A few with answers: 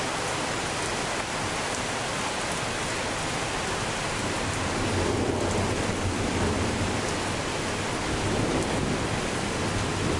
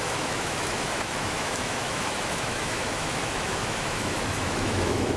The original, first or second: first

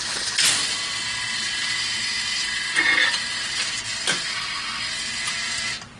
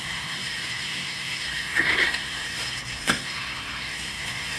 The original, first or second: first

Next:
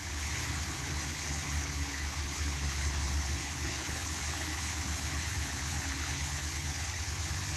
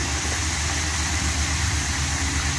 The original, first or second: second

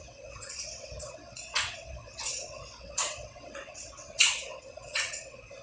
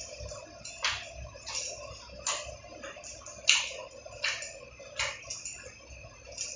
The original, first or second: second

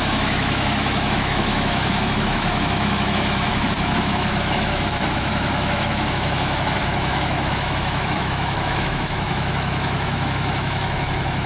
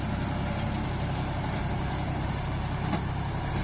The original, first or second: second